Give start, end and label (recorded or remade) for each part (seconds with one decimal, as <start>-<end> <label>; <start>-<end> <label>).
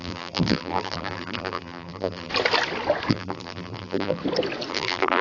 0.0-2.3 remade; 2.3-3.1 recorded; 3.1-4.2 remade; 4.2-4.7 recorded; 4.7-5.2 remade